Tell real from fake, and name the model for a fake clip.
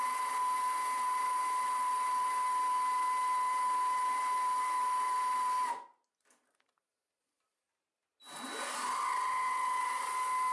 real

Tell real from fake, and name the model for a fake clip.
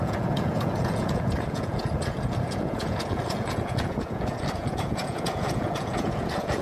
fake, vocoder, Vocos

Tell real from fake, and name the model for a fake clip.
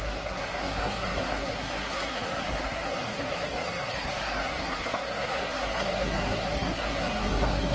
fake, codec, SNAC